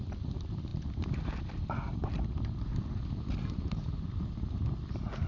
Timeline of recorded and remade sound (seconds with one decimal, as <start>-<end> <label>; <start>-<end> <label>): 0.0-5.3 remade